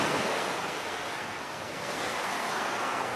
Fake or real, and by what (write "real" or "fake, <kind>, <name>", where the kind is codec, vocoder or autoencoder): fake, codec, SNAC